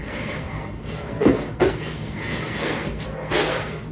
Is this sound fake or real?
fake